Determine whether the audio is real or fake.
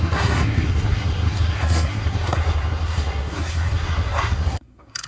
fake